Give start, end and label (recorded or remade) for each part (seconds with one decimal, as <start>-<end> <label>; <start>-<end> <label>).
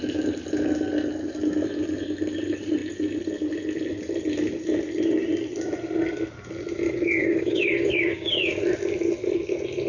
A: 0.0-7.2 recorded; 7.2-8.5 remade; 8.5-9.9 recorded